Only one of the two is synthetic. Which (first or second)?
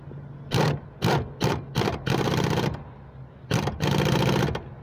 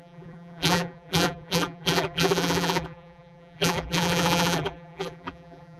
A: second